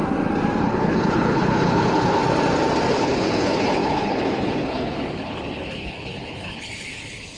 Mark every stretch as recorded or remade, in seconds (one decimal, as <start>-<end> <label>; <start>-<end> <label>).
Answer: 0.0-0.6 recorded; 0.6-2.2 remade; 2.2-2.9 recorded; 2.9-7.4 remade